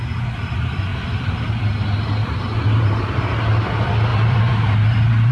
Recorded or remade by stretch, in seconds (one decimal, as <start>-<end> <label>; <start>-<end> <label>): 0.0-2.2 recorded; 2.2-3.6 remade; 3.6-4.1 recorded; 4.1-5.3 remade